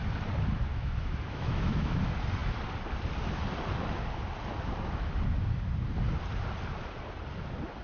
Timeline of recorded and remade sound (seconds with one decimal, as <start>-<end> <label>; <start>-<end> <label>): 0.0-0.7 recorded; 0.7-2.0 remade; 2.0-7.8 recorded